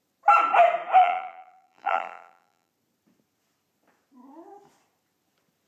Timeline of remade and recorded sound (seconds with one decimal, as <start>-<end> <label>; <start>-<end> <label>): 0.0-1.0 recorded; 1.0-2.7 remade; 2.7-5.7 recorded

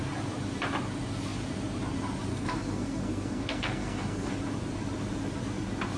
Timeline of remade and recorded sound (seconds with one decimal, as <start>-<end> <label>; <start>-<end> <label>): 0.0-2.3 recorded; 2.3-4.3 remade; 4.3-6.0 recorded

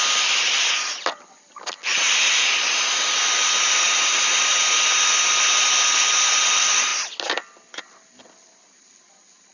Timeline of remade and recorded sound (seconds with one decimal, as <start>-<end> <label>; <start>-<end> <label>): 0.0-9.5 recorded